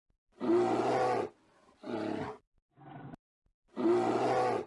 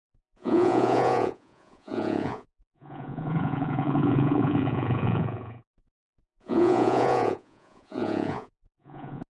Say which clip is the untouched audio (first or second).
first